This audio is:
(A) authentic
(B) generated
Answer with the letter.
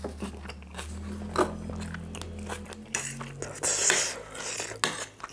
A